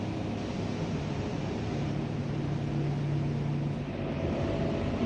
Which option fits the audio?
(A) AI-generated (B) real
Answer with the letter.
B